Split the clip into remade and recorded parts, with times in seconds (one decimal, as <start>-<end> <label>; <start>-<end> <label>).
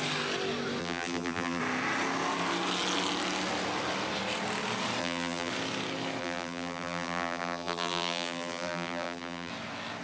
0.0-0.8 recorded; 0.8-1.6 remade; 1.6-5.0 recorded; 5.0-5.5 remade; 5.5-6.2 recorded; 6.2-9.5 remade; 9.5-10.0 recorded